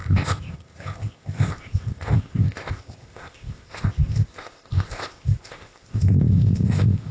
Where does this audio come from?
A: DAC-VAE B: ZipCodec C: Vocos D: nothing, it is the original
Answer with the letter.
B